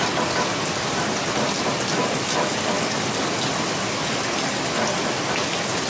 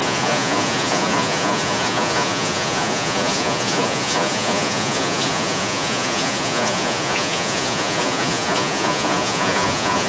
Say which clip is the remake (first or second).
second